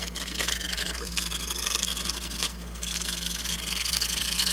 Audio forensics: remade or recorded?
remade